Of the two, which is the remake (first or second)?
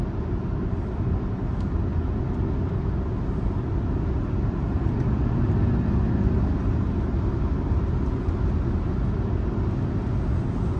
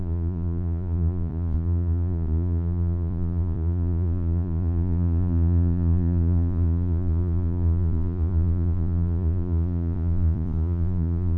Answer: second